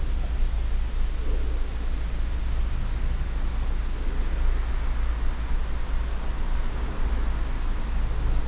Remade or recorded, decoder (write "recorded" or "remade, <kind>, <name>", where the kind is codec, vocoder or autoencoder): recorded